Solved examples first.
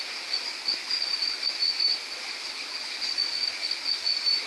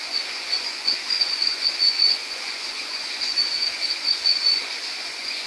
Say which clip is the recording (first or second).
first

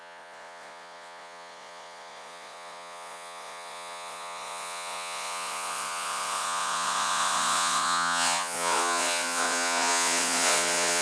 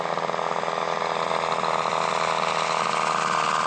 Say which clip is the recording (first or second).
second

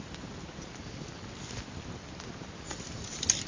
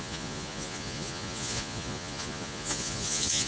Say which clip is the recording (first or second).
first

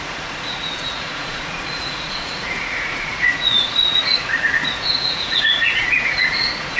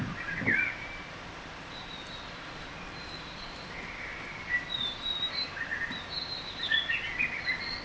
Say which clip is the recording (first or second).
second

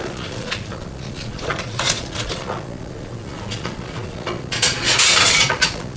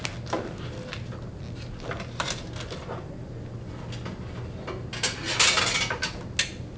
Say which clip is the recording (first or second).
second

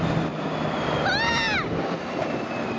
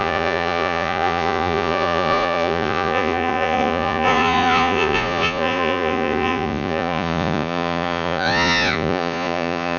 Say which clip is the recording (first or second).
first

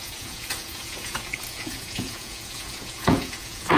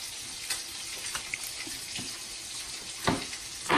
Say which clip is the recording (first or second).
second